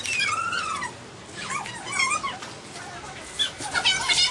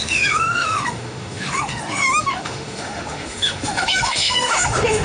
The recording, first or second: first